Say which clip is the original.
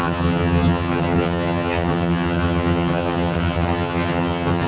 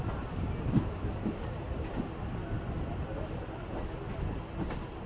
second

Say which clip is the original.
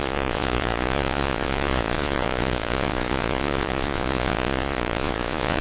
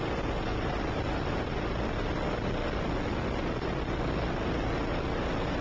second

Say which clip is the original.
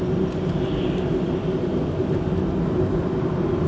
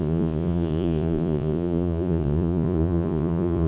first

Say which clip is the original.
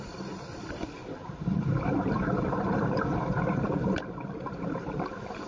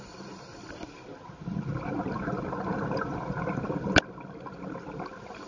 second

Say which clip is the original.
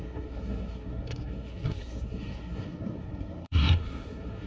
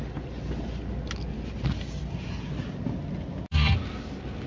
second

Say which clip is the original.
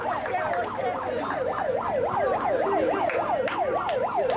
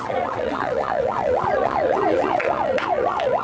first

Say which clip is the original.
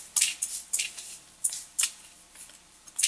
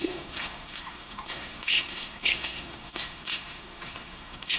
first